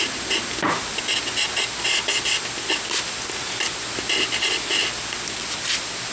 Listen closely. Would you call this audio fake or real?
real